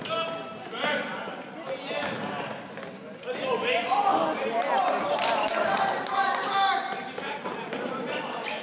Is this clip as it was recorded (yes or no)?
yes